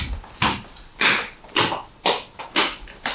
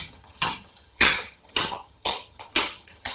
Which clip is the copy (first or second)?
second